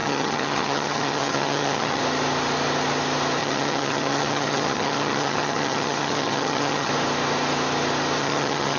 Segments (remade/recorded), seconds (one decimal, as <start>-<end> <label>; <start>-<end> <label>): 0.0-2.0 remade; 2.0-3.4 recorded; 3.4-6.9 remade; 6.9-8.2 recorded; 8.2-8.8 remade